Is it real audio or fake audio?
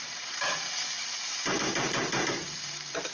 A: fake